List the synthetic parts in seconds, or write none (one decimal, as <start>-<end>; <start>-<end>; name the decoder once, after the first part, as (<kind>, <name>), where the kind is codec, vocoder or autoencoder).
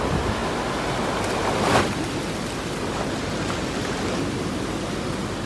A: none